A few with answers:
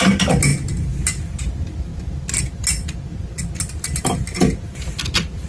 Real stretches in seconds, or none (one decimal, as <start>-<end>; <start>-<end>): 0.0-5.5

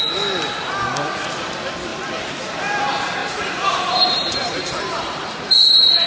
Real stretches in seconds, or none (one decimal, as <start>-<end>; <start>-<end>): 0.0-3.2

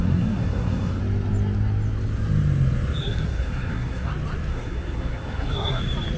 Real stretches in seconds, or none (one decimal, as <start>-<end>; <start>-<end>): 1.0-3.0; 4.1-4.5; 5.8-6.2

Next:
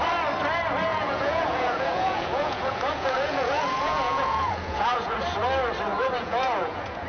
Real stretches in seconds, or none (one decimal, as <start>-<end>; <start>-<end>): 0.0-0.9; 5.2-5.9

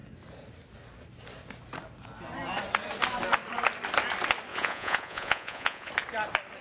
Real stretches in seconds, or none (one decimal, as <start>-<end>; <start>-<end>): 0.0-4.5; 5.9-6.6

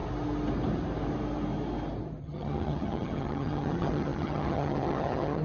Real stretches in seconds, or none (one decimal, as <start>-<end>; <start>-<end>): 0.0-2.2